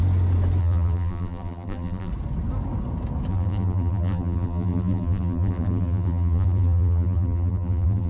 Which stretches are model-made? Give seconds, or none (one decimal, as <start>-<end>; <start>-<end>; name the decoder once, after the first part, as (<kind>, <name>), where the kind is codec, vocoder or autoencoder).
0.6-2.1 (vocoder, BigVGAN v2); 3.3-8.1